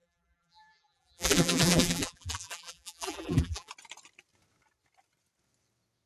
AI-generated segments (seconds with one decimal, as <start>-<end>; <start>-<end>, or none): 0.0-3.7